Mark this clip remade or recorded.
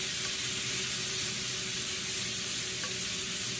recorded